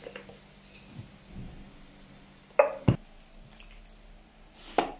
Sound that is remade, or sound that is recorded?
recorded